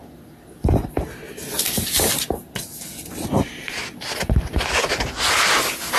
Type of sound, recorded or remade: recorded